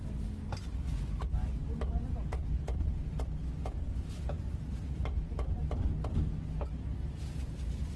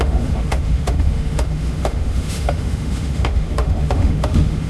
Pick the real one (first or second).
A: first